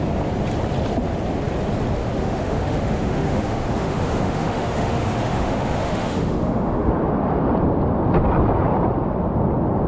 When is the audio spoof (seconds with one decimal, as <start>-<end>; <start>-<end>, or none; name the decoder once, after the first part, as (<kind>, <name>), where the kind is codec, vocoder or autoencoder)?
2.0-6.9 (autoencoder, DAC-VAE)